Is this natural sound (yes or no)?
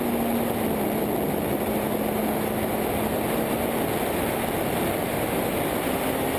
yes